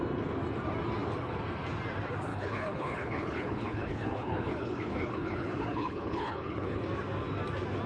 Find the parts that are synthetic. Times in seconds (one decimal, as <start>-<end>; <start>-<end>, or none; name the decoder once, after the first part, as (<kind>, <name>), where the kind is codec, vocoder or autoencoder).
2.3-6.8 (codec, HILCodec)